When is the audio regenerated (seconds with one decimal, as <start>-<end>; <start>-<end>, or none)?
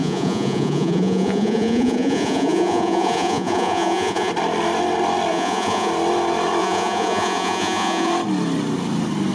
0.0-4.3; 5.3-5.9; 6.6-8.1